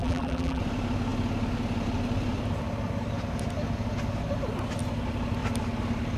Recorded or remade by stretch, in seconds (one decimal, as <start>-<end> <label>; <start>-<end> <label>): 0.0-0.6 remade; 0.6-6.2 recorded